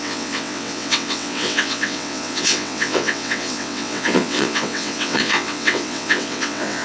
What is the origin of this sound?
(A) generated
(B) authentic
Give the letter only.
A